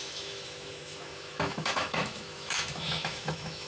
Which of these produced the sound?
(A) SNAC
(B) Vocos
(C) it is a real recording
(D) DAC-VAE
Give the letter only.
D